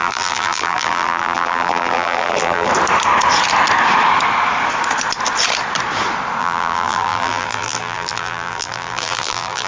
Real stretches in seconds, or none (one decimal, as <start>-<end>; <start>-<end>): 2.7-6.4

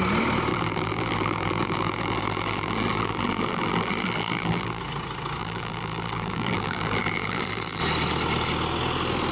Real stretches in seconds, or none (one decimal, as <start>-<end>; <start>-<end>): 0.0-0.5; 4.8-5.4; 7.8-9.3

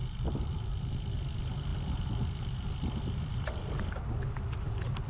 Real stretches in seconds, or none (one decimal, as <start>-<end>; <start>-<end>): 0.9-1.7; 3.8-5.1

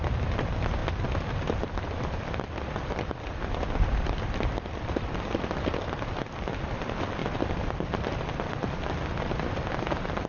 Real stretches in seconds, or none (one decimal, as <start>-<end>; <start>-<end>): none

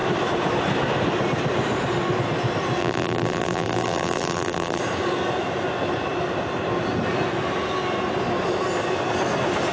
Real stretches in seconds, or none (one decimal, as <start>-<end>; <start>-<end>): 0.0-2.8; 4.8-9.7

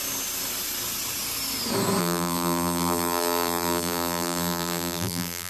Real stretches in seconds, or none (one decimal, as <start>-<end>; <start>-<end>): 0.0-2.0